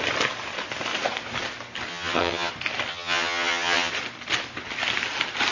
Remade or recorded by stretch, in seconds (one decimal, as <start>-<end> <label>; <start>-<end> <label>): 0.0-1.9 recorded; 1.9-2.5 remade; 2.5-2.9 recorded; 2.9-3.9 remade; 3.9-5.5 recorded